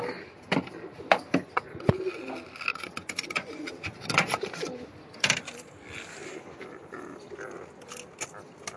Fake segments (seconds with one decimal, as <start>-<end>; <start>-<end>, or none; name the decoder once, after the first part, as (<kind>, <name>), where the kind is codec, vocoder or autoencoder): 1.4-1.9 (vocoder, Vocos); 2.7-3.9